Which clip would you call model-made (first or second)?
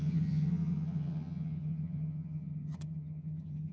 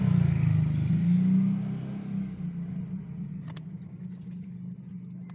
first